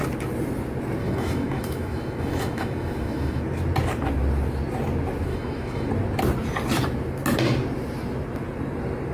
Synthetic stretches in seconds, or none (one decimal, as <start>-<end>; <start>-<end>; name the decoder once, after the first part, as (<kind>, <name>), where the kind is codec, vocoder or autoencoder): 1.0-3.4 (autoencoder, DAC-VAE); 5.3-5.9